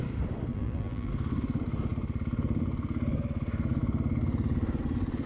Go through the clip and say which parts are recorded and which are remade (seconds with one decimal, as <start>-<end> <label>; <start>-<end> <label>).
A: 0.0-0.5 recorded; 0.5-1.1 remade; 1.1-5.3 recorded